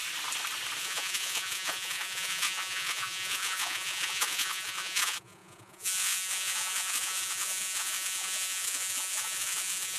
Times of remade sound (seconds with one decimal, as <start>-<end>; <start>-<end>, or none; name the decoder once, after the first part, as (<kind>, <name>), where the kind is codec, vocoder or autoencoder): 0.8-10.0 (vocoder, Vocos)